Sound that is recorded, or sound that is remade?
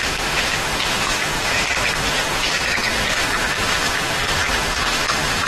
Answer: remade